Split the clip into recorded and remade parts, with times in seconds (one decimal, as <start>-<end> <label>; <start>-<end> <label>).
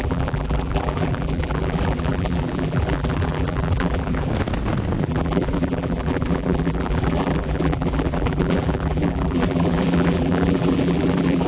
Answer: 0.0-4.3 remade; 4.3-5.0 recorded; 5.0-11.5 remade